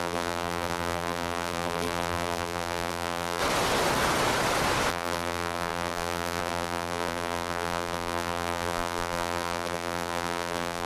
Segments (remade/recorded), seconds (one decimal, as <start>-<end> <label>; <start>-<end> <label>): 0.0-3.4 remade; 3.4-4.9 recorded; 4.9-10.9 remade